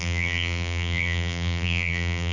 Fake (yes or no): yes